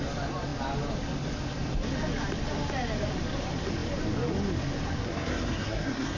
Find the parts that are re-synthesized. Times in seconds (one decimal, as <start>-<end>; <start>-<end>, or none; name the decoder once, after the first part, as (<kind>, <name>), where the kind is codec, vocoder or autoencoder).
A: 5.0-6.2 (codec, SNAC)